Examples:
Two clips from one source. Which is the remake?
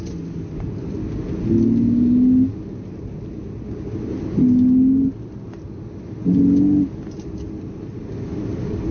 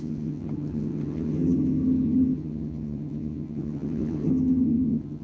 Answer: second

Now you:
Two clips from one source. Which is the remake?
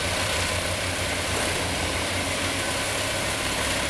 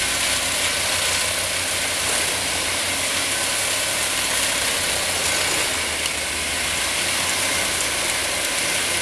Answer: first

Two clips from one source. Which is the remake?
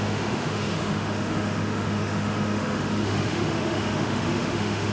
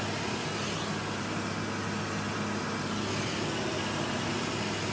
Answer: first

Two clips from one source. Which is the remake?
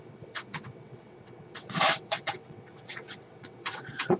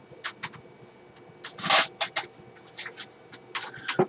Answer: first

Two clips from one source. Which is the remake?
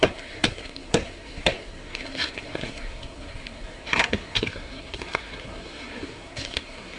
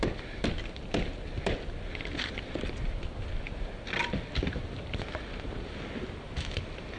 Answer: first